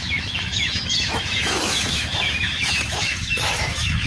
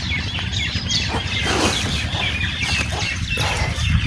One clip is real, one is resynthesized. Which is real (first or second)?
second